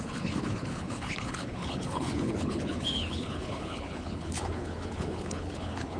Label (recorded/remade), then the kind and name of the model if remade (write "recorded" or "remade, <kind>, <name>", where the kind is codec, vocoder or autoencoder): remade, codec, HILCodec